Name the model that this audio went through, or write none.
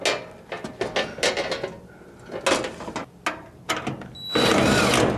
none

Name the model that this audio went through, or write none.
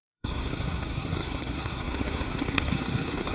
codec, SNAC